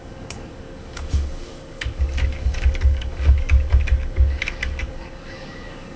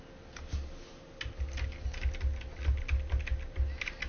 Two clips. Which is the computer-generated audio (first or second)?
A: first